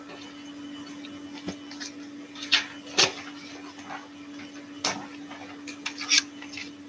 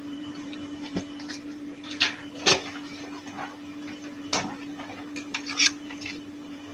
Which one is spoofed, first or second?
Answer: second